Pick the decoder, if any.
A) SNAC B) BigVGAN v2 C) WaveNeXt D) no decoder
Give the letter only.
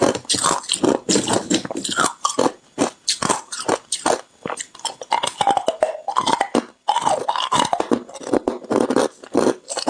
D